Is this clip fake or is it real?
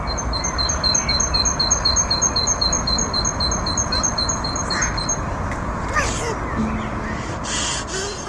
real